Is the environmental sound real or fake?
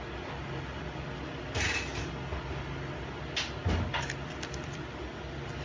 real